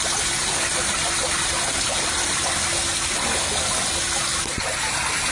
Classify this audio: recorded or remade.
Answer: recorded